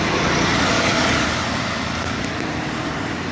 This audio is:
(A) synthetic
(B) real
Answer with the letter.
A